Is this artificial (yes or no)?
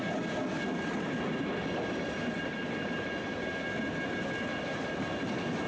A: no